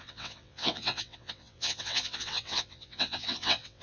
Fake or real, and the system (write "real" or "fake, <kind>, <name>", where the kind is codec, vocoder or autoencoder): fake, vocoder, WaveNeXt